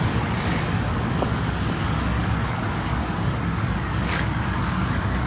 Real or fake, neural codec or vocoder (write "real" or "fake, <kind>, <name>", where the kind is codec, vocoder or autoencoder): fake, codec, DAC